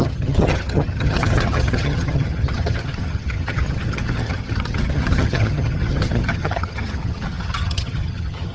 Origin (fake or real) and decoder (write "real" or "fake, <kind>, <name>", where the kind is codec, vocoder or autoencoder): fake, vocoder, HiFi-GAN